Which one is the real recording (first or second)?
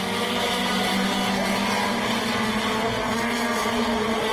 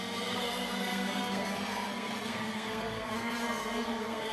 first